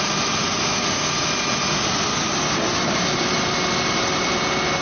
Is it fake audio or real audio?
real